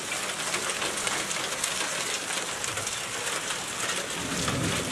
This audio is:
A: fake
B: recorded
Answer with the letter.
B